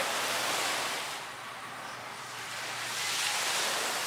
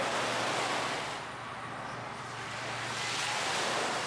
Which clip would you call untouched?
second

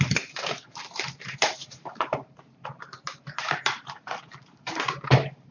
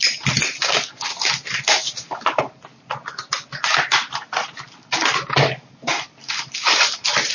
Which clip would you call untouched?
second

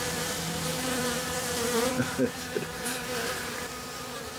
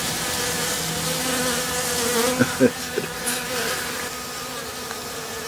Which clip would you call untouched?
second